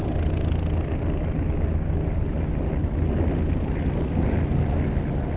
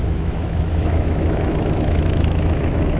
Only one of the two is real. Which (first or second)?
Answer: first